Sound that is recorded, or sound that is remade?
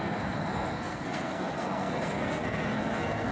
remade